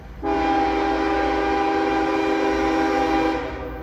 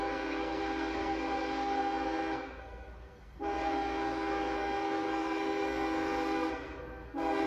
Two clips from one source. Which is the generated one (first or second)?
second